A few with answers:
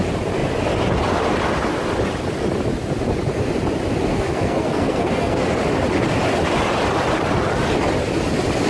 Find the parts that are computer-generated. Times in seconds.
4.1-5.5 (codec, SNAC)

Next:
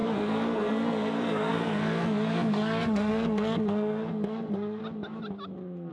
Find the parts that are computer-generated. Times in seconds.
0.0-4.8 (codec, SNAC)

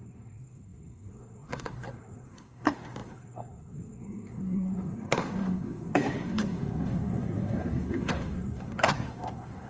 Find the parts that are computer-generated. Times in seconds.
0.0-9.7 (codec, SNAC)